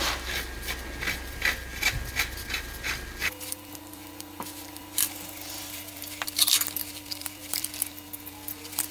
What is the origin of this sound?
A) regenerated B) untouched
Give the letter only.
A